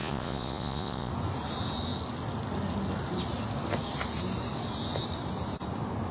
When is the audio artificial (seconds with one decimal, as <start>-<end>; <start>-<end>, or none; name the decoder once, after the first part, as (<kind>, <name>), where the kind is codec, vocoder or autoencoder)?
0.0-1.1 (vocoder, Vocos)